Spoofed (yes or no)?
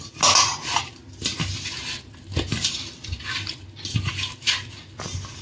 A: no